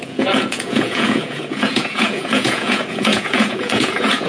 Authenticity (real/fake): fake